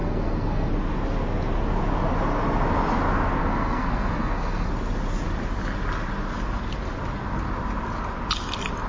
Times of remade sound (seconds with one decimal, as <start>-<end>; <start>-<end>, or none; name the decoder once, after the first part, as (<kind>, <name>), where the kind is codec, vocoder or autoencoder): 0.0-0.7 (codec, SNAC); 3.4-4.7